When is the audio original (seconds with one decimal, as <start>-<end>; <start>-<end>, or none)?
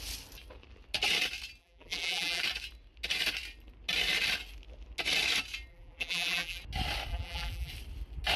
0.0-1.6; 2.4-5.7; 6.6-7.1; 7.7-8.4